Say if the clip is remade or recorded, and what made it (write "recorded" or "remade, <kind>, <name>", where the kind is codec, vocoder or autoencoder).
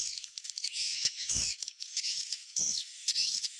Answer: remade, autoencoder, DAC-VAE